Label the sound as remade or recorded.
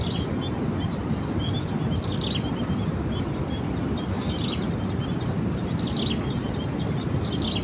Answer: recorded